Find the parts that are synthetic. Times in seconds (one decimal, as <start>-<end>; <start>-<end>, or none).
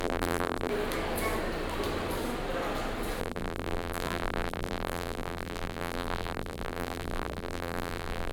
0.0-0.7; 3.2-8.3